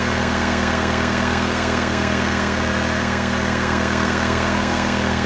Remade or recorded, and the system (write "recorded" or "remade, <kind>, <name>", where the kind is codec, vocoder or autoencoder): remade, codec, SNAC